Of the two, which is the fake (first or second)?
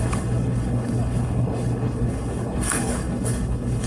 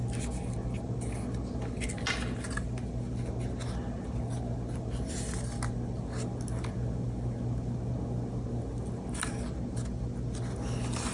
first